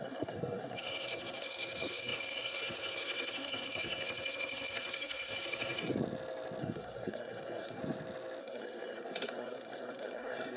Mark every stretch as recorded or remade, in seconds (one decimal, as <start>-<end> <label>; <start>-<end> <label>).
0.0-5.9 remade; 5.9-6.6 recorded; 6.6-7.8 remade; 7.8-8.4 recorded; 8.4-10.6 remade